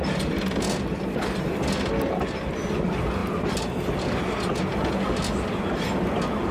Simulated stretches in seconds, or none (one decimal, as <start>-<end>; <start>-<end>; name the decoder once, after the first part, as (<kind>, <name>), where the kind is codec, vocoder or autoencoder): none